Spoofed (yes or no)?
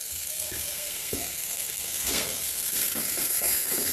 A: yes